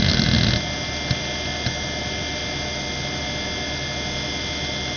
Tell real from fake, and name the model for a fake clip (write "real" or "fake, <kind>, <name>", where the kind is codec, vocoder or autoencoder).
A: real